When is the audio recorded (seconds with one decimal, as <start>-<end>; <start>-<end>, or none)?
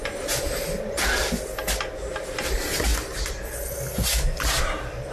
0.0-2.4; 2.9-4.6